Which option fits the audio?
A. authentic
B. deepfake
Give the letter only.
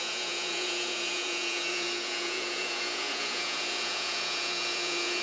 B